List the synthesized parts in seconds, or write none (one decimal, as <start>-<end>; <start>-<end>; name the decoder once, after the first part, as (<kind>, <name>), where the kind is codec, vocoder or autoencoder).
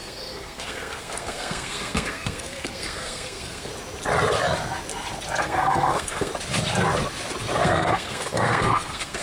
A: 0.0-3.7 (codec, SNAC); 5.4-6.3; 7.6-9.2